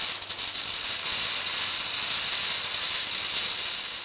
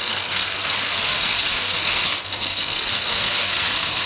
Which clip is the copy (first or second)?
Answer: second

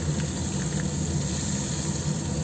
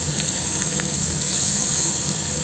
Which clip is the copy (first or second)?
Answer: second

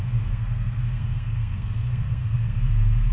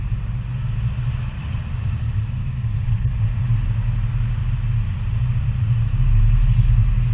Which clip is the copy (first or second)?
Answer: first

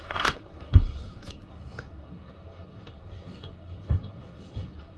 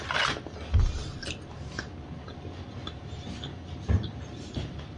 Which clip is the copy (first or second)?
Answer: first